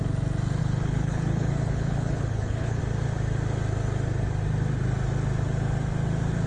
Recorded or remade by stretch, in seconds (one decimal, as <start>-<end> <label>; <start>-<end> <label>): 0.0-0.6 recorded; 0.6-2.8 remade; 2.8-6.5 recorded